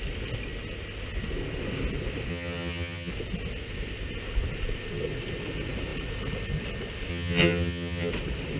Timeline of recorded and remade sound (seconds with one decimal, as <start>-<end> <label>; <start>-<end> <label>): 0.0-2.3 recorded; 2.3-3.1 remade; 3.1-7.1 recorded; 7.1-8.1 remade; 8.1-8.6 recorded